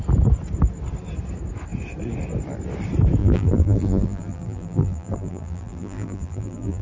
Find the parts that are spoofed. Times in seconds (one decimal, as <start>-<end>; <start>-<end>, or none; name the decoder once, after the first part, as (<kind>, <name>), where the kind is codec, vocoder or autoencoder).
3.2-6.8 (vocoder, BigVGAN v2)